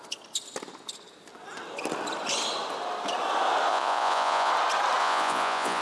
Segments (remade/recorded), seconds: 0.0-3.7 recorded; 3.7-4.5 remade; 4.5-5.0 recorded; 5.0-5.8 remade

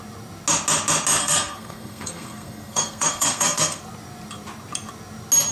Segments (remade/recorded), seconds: 0.0-1.2 recorded; 1.2-3.8 remade; 3.8-5.5 recorded